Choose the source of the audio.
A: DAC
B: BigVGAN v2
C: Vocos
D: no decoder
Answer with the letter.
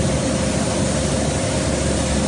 D